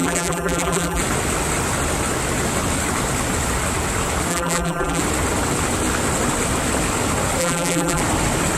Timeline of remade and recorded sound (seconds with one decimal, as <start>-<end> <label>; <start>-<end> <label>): 0.0-1.0 remade; 1.0-4.3 recorded; 4.3-5.0 remade; 5.0-7.4 recorded; 7.4-8.0 remade; 8.0-8.6 recorded